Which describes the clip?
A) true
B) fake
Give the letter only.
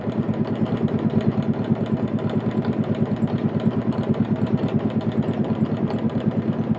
B